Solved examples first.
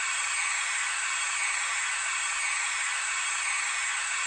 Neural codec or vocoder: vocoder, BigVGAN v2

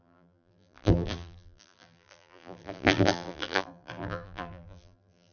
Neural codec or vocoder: vocoder, BigVGAN v2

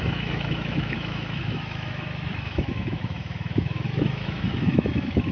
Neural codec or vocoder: autoencoder, DAC-VAE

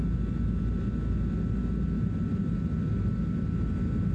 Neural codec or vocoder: none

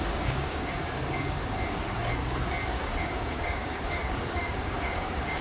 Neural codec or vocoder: codec, DAC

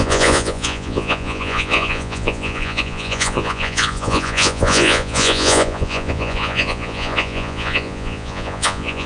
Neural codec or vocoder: vocoder, Vocos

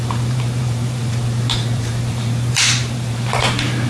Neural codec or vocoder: vocoder, BigVGAN v2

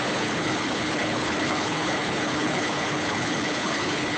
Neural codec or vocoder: codec, HILCodec